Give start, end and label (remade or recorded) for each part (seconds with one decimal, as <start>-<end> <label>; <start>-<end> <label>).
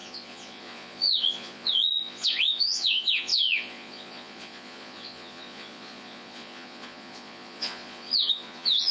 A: 0.0-8.9 remade